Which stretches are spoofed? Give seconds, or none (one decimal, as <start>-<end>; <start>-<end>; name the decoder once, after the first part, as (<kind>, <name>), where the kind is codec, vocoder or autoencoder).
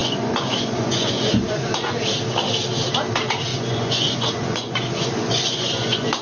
0.0-1.9 (vocoder, Vocos); 3.5-6.2